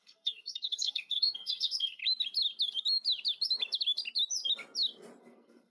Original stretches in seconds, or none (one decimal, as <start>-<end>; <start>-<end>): 2.0-5.2